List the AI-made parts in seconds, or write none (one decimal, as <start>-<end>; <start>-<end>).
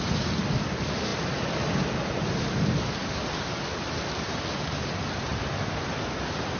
none